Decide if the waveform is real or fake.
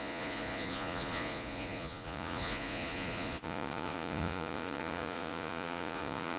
fake